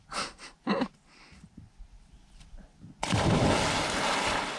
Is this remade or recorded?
recorded